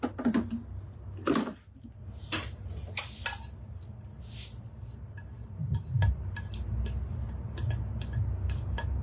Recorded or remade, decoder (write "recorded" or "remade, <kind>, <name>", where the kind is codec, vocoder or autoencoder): recorded